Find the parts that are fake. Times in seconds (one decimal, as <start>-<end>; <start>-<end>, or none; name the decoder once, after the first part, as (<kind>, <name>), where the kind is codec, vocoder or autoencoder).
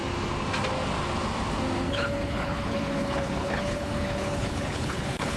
1.9-5.4 (codec, HILCodec)